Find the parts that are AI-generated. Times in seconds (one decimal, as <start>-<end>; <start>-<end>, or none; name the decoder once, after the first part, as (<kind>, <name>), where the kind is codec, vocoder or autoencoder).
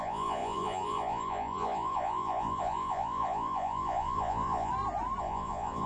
0.0-4.7 (vocoder, Vocos); 5.2-5.9